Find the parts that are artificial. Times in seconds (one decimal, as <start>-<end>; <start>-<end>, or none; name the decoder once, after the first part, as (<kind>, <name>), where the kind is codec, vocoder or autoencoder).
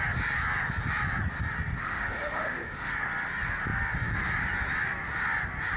1.8-2.9 (autoencoder, DAC-VAE)